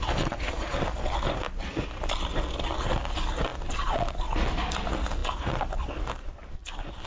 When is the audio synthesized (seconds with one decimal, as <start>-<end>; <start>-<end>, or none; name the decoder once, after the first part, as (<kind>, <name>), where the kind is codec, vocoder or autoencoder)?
none